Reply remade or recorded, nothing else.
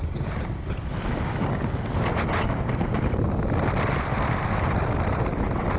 recorded